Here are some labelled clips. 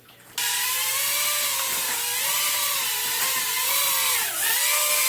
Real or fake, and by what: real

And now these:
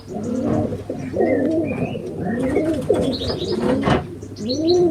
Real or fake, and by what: real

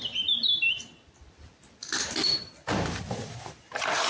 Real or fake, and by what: fake, vocoder, BigVGAN v2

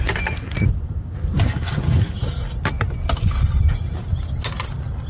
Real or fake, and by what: real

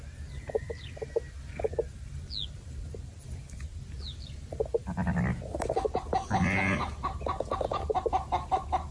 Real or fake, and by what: real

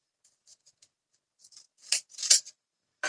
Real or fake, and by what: fake, vocoder, BigVGAN v2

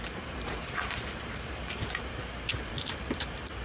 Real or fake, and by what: fake, vocoder, BigVGAN v2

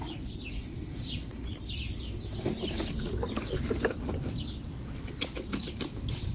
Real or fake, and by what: real